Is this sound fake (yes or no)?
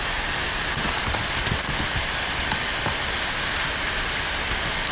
no